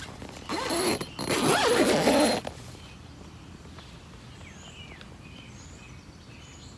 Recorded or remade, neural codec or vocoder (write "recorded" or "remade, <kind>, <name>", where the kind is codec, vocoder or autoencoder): recorded